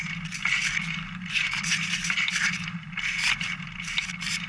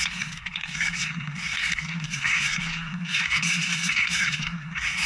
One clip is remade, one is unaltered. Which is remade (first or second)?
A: second